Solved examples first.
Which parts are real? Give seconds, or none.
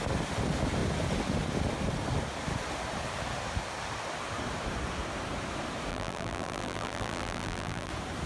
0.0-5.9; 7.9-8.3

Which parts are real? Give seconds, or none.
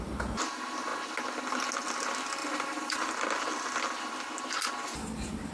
0.0-2.4; 3.1-5.5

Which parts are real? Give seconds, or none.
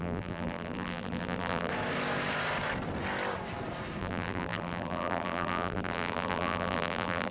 1.7-4.0